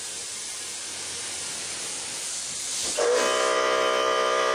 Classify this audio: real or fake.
real